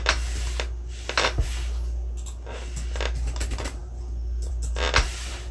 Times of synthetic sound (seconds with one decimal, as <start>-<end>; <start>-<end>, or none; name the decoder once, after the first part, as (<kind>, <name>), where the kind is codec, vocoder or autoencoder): none